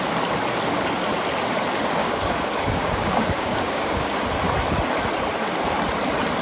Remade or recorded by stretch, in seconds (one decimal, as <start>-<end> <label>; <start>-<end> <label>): 0.0-2.0 recorded; 2.0-4.2 remade; 4.2-6.4 recorded

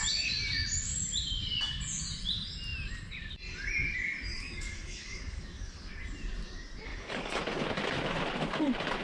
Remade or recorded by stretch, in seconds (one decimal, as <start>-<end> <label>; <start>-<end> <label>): 0.0-4.3 recorded; 4.3-5.9 remade; 5.9-6.9 recorded; 6.9-7.4 remade; 7.4-9.0 recorded

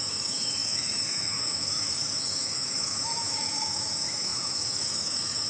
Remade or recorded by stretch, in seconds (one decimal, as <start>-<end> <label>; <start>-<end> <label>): 0.0-5.5 remade

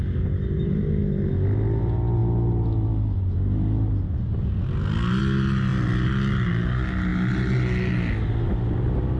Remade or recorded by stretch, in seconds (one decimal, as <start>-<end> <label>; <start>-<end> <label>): 0.0-9.2 recorded

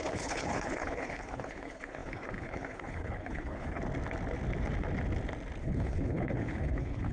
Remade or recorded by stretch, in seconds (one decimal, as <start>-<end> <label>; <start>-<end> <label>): 0.0-3.8 remade; 3.8-5.6 recorded; 5.6-7.1 remade